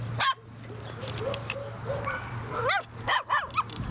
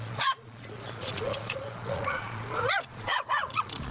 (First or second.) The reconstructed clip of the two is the second